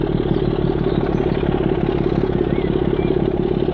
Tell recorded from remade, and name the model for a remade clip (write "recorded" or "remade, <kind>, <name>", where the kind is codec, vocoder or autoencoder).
recorded